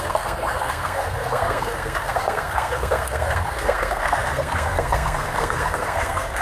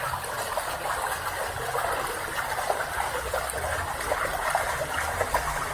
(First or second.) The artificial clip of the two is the first